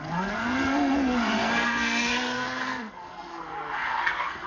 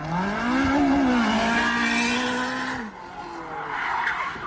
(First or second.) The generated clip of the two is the first